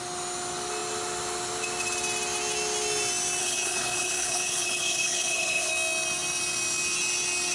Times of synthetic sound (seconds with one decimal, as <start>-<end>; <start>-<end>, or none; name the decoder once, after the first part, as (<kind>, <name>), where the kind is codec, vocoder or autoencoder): 3.4-5.7 (codec, HILCodec)